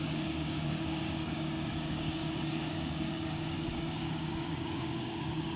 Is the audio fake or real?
fake